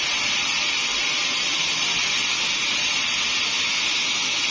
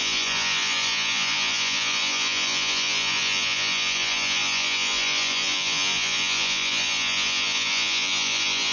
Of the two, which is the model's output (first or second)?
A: second